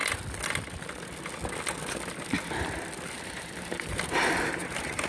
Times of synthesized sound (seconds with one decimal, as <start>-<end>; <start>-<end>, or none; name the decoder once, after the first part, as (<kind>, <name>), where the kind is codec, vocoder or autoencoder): 3.1-5.1 (vocoder, BigVGAN v2)